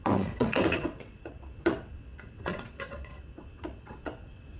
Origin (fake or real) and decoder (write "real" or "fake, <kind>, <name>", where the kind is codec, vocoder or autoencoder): fake, vocoder, WaveNeXt